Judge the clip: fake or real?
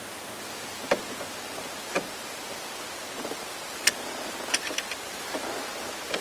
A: real